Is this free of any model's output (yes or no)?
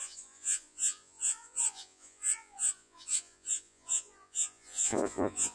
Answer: no